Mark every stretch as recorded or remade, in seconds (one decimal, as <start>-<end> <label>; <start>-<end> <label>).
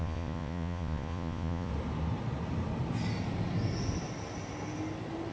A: 0.0-1.7 remade; 1.7-5.3 recorded